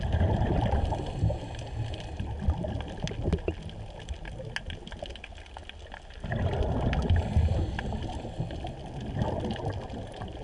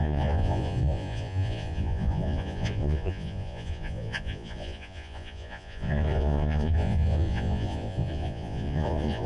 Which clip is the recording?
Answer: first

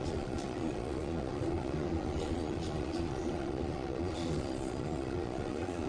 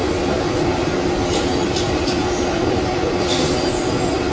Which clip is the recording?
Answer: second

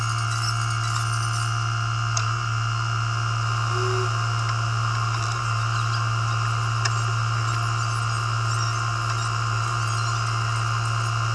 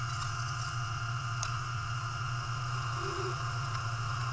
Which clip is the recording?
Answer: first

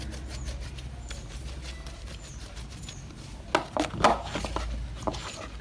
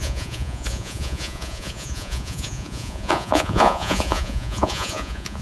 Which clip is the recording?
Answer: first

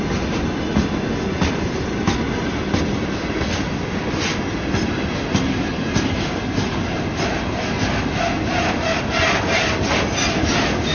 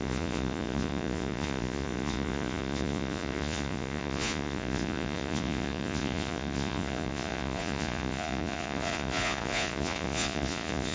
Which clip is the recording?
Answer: first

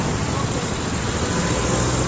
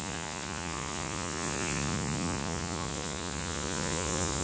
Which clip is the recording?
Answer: first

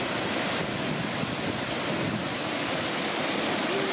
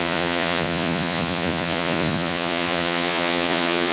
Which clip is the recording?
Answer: first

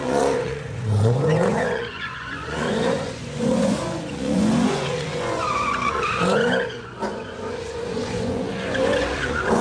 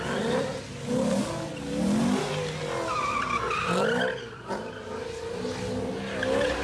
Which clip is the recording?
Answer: second